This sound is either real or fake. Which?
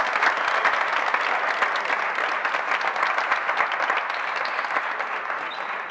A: real